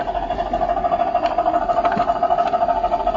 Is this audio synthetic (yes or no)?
no